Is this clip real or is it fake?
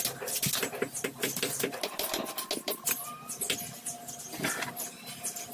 real